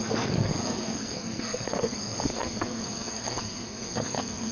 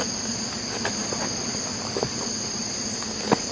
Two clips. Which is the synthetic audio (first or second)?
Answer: first